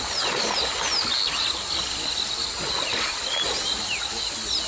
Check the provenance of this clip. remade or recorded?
recorded